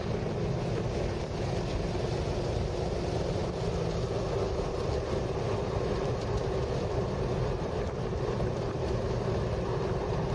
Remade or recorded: recorded